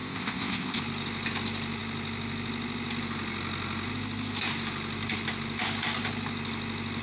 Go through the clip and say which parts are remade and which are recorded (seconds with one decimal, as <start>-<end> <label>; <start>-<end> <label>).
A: 0.0-0.8 remade; 0.8-7.0 recorded